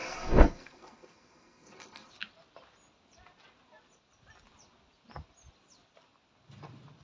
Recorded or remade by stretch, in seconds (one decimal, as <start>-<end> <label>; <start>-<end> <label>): 0.0-2.1 remade; 2.1-7.0 recorded